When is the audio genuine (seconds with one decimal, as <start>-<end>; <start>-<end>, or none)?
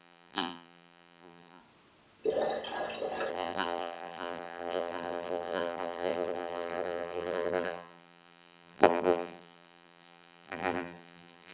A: 1.6-3.3